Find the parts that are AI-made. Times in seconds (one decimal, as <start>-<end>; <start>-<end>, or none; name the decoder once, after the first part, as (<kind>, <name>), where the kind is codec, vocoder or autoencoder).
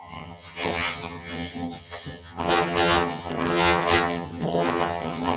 0.0-5.4 (vocoder, HiFi-GAN)